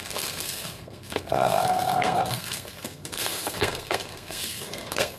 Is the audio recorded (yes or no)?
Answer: no